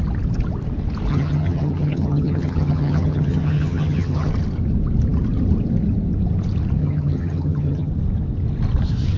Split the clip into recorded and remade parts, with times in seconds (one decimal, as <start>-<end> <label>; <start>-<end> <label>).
0.0-1.1 recorded; 1.1-4.3 remade; 4.3-6.8 recorded; 6.8-7.9 remade; 7.9-9.2 recorded